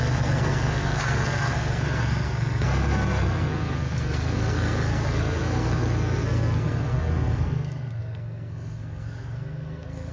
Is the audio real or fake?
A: fake